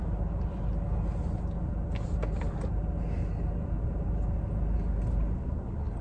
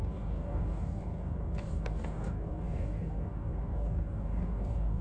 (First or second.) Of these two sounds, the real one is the first